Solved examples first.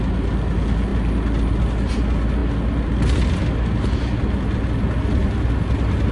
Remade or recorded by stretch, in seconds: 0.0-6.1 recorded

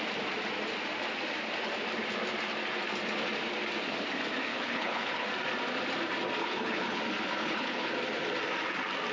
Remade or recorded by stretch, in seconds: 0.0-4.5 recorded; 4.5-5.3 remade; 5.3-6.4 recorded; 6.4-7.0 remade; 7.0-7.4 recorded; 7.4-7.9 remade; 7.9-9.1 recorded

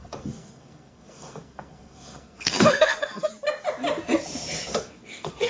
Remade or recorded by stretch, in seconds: 0.0-3.3 remade; 3.3-4.7 recorded; 4.7-5.5 remade

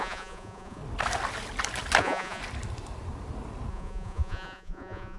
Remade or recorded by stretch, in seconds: 0.0-0.8 remade; 0.8-2.0 recorded; 2.0-2.4 remade; 2.4-3.7 recorded; 3.7-5.2 remade

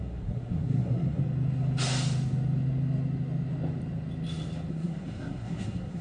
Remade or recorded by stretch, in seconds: 0.0-1.2 remade; 1.2-4.7 recorded; 4.7-6.0 remade

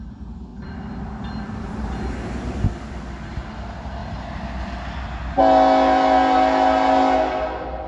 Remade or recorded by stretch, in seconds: 0.0-7.9 recorded